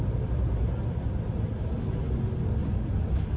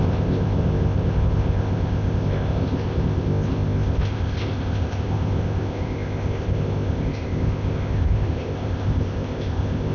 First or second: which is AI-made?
second